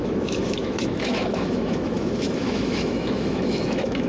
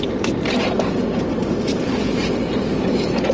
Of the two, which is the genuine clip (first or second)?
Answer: second